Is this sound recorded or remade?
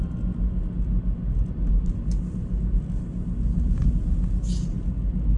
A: recorded